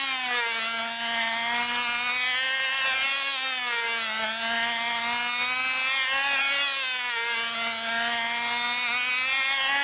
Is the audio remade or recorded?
recorded